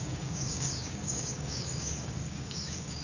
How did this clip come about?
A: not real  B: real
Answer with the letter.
A